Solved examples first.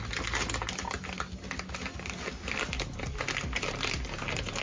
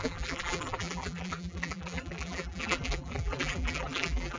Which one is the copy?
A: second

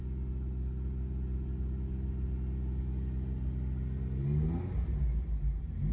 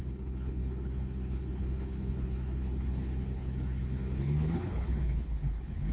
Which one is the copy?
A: second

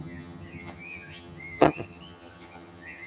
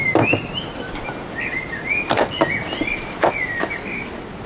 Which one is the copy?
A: first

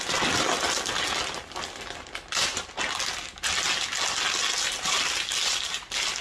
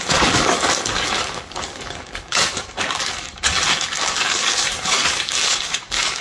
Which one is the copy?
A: second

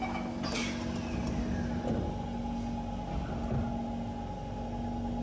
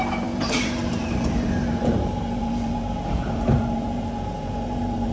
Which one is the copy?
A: second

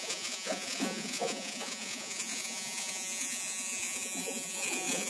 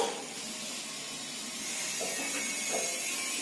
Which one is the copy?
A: first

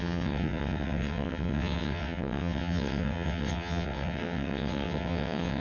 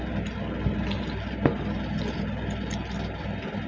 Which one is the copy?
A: first